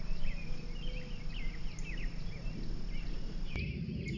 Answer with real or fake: real